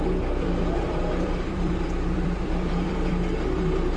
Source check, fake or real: fake